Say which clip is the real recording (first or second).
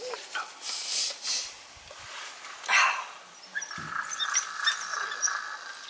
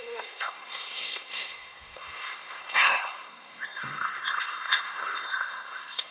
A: first